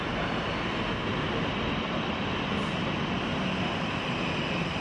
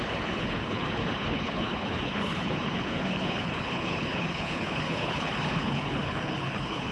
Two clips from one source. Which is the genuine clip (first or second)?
first